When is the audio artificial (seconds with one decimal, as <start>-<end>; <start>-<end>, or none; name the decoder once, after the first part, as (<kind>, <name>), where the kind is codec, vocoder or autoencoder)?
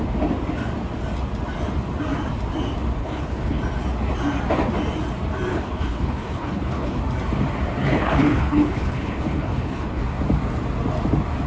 3.0-3.6 (codec, HILCodec); 5.5-7.0; 7.8-10.0